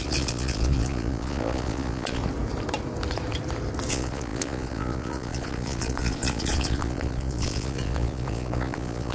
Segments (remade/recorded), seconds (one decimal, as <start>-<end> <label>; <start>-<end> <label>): 0.0-2.2 remade; 2.2-3.9 recorded; 3.9-9.1 remade